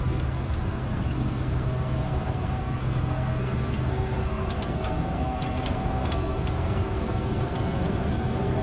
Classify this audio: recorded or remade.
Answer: remade